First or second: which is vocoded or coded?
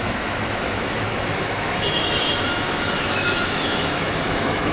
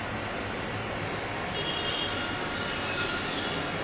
first